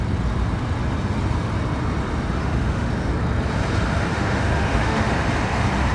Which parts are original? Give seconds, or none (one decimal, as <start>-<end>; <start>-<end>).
0.0-2.4; 2.9-4.1; 5.1-5.9

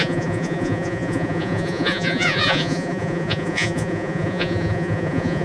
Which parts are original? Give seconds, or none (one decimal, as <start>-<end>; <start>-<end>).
none